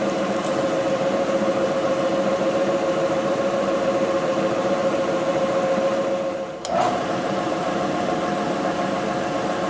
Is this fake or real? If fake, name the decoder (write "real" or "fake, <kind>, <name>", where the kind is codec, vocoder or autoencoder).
fake, vocoder, BigVGAN v2